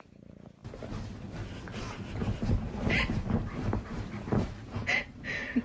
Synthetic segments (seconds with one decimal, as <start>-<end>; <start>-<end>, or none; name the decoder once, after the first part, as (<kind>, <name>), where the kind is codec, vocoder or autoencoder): 2.2-5.6 (vocoder, BigVGAN v2)